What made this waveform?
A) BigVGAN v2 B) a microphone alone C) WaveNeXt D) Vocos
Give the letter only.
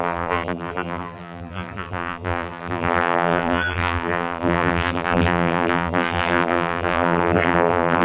A